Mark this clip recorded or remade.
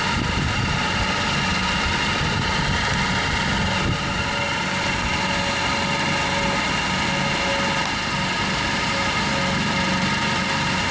recorded